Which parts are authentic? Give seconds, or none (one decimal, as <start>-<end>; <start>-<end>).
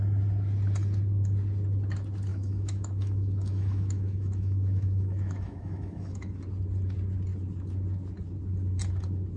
0.0-2.3; 6.3-9.4